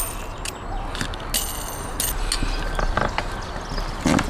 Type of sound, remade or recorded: recorded